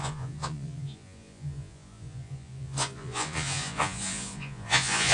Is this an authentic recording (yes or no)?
no